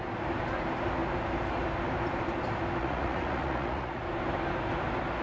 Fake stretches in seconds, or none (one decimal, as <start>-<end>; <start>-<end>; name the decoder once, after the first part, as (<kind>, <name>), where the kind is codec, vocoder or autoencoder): 2.8-4.0 (vocoder, Vocos)